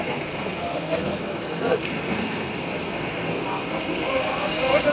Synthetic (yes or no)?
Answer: yes